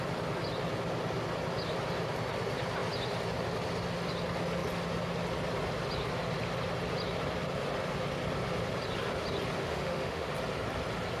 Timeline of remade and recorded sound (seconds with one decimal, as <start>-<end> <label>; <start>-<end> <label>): 0.0-9.6 recorded; 9.6-10.3 remade; 10.3-11.2 recorded